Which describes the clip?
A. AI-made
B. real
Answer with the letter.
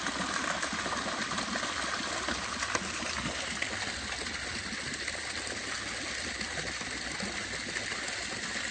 B